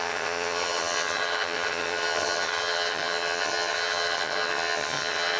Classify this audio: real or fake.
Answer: fake